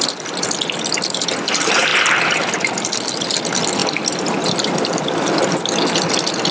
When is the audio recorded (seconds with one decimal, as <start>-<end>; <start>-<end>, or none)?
0.0-6.5